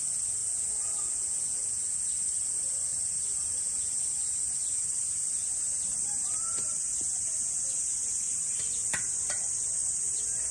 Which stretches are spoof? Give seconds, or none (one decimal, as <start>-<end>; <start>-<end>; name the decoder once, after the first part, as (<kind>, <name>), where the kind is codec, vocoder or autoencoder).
0.4-1.9 (vocoder, Vocos)